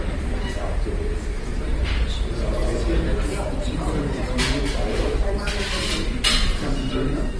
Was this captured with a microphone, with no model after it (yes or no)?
no